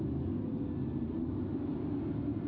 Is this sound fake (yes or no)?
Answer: no